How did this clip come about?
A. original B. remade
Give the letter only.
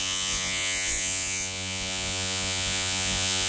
B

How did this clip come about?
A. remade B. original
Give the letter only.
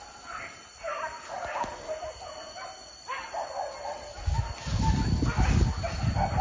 B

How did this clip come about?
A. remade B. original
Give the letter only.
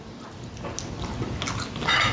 B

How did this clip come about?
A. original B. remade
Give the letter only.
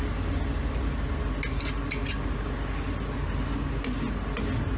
A